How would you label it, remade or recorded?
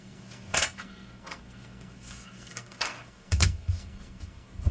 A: remade